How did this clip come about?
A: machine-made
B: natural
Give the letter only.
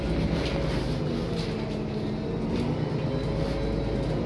B